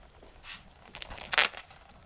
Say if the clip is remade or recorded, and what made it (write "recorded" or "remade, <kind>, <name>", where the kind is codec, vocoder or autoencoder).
recorded